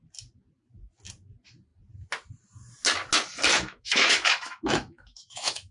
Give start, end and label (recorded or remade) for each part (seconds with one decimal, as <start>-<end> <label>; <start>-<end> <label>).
0.0-3.5 recorded; 3.5-5.7 remade

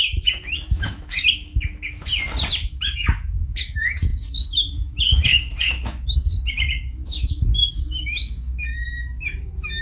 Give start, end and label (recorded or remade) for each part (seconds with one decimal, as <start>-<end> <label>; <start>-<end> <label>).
0.0-2.1 remade; 2.1-2.7 recorded; 2.7-9.8 remade